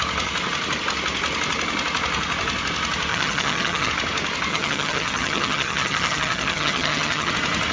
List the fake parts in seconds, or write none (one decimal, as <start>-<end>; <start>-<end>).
3.1-3.9; 4.5-7.3